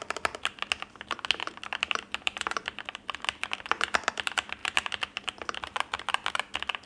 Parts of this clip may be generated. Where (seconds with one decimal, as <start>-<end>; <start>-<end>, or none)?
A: 1.4-4.1; 4.6-6.3